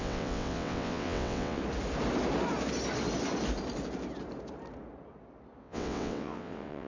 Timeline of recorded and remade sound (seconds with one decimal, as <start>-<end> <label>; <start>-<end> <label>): 0.0-1.6 remade; 1.6-5.6 recorded; 5.6-6.9 remade